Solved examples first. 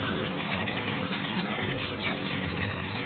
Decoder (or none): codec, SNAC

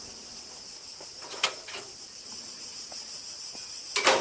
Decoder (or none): none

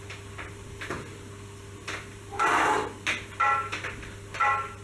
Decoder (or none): none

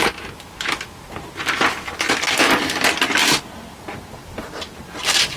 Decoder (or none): none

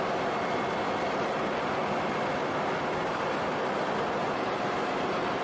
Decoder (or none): none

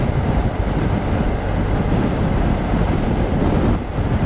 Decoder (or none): none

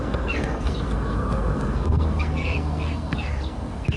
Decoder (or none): codec, SNAC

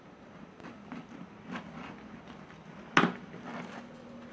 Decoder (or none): none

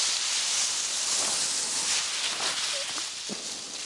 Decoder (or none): none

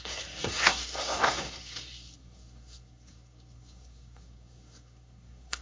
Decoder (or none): codec, SNAC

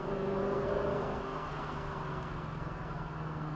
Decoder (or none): codec, SNAC